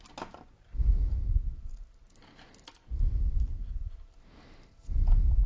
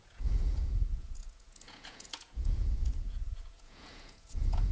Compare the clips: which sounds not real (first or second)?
second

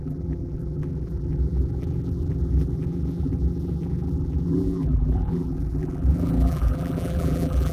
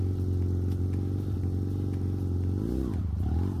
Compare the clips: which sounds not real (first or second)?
first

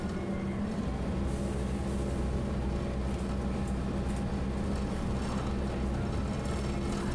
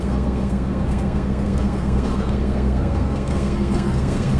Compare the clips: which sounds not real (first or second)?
second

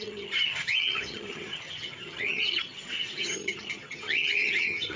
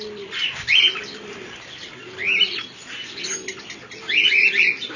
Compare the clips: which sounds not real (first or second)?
first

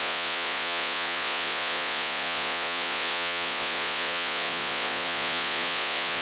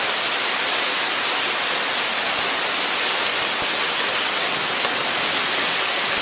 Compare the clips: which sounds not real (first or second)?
first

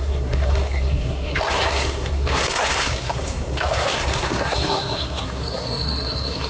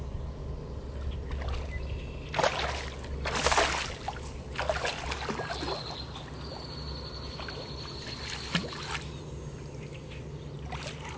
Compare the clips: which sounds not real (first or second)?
first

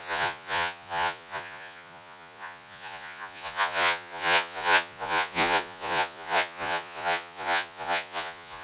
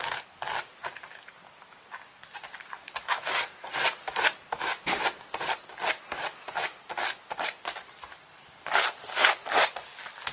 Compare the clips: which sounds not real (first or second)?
first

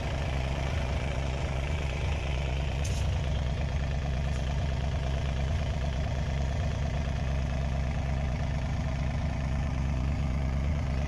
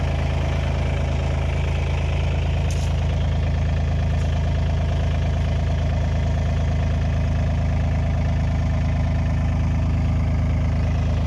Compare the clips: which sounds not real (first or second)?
first